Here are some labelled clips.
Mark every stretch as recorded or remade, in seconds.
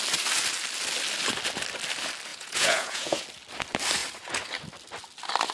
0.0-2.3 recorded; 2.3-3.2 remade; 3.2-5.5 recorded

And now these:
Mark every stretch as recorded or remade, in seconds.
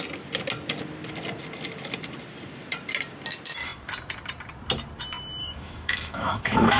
0.0-5.4 recorded; 5.4-6.8 remade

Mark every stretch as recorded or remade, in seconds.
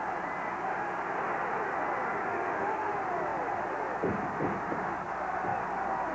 0.0-2.3 recorded; 2.3-2.9 remade; 2.9-6.1 recorded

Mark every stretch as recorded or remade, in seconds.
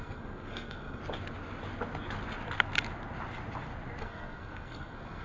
0.0-1.0 remade; 1.0-4.0 recorded; 4.0-5.2 remade